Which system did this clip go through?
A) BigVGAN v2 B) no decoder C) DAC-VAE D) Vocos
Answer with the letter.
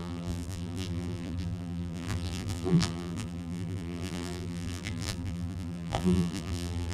A